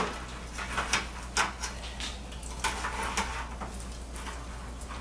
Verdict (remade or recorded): recorded